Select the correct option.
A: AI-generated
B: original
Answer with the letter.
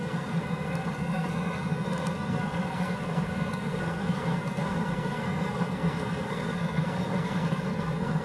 A